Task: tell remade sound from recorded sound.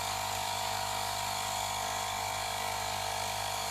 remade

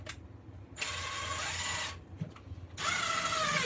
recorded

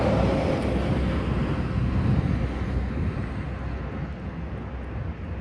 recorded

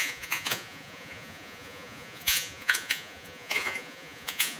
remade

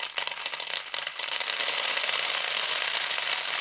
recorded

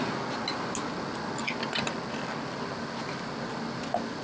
recorded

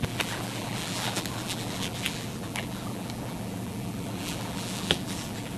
remade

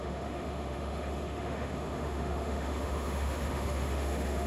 remade